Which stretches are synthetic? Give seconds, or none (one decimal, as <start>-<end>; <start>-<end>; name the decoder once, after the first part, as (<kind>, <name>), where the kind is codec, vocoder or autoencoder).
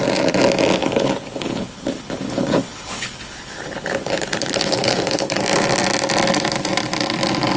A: 0.8-5.4 (codec, HILCodec)